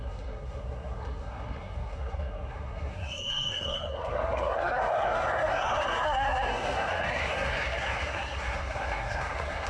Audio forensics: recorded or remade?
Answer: remade